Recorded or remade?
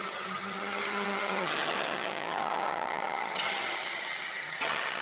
remade